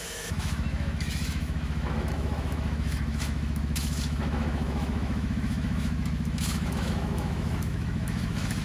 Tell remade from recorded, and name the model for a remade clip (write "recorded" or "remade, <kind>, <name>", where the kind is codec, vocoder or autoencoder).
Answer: remade, autoencoder, DAC-VAE